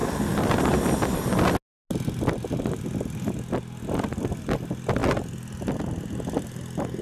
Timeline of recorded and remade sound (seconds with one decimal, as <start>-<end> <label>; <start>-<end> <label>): 0.0-7.0 recorded